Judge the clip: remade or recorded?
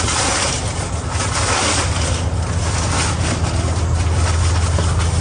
recorded